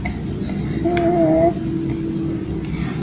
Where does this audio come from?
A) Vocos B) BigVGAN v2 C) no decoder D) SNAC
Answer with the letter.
C